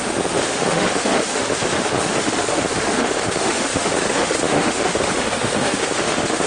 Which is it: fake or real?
fake